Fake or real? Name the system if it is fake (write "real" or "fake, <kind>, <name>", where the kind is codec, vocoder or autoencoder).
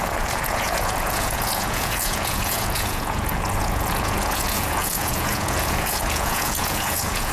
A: fake, vocoder, Vocos